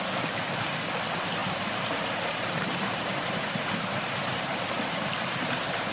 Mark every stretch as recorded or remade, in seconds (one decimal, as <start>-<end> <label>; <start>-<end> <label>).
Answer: 0.0-1.4 recorded; 1.4-4.6 remade; 4.6-5.9 recorded